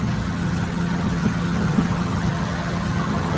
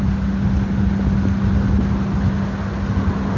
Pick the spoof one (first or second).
first